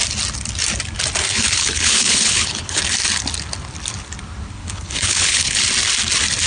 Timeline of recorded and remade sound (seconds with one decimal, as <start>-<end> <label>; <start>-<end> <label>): 0.0-1.3 recorded; 1.3-2.8 remade; 2.8-4.6 recorded; 4.6-5.6 remade; 5.6-6.5 recorded